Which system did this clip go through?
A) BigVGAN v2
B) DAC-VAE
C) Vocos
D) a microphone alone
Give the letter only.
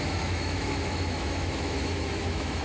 B